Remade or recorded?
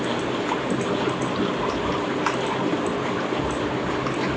recorded